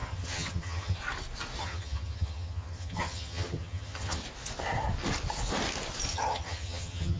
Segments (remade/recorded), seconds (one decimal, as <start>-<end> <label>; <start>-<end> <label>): 0.0-1.0 remade; 1.0-1.6 recorded; 1.6-4.2 remade; 4.2-6.1 recorded; 6.1-7.2 remade

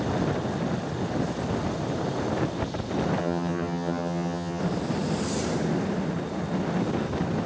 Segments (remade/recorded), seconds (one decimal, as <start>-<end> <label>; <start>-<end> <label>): 0.0-3.2 recorded; 3.2-4.6 remade; 4.6-7.5 recorded

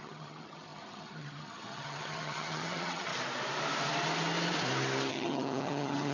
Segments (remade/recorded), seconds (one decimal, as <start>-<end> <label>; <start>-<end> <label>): 0.0-3.1 remade; 3.1-5.1 recorded; 5.1-6.1 remade

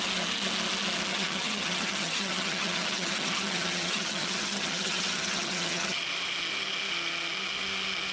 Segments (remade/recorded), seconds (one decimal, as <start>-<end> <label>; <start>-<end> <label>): 0.0-1.1 recorded; 1.1-6.0 remade; 6.0-8.1 recorded

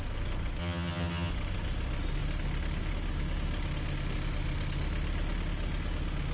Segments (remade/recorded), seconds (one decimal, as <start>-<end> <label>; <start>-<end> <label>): 0.0-0.6 recorded; 0.6-1.3 remade; 1.3-6.3 recorded

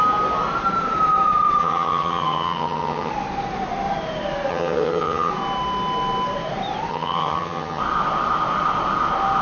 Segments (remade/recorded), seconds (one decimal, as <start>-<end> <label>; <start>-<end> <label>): 0.0-1.6 recorded; 1.6-3.1 remade; 3.1-4.5 recorded; 4.5-5.3 remade; 5.3-6.9 recorded; 6.9-7.8 remade; 7.8-9.4 recorded

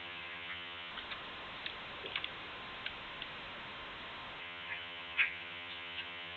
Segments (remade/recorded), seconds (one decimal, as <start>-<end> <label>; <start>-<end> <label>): 0.0-0.9 remade; 0.9-4.4 recorded; 4.4-6.4 remade